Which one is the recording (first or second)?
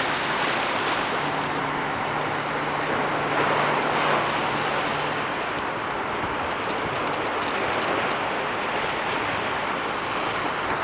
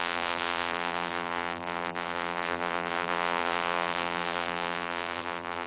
first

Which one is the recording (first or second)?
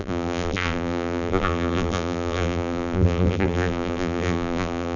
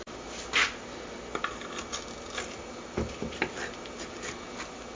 second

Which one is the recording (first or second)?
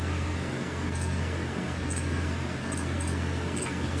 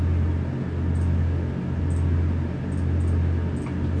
second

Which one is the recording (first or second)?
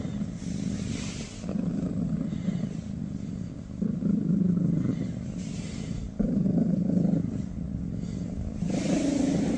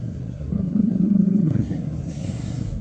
first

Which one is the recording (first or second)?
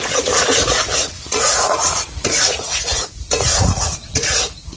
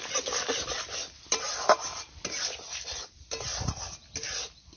second